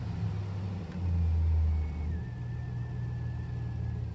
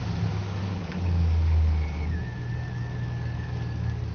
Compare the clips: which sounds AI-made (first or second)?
second